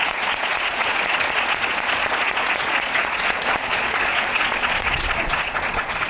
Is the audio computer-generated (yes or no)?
yes